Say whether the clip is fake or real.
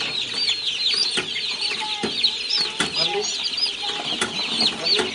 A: real